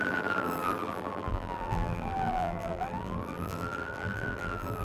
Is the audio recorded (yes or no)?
no